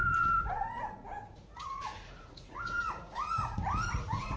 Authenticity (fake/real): fake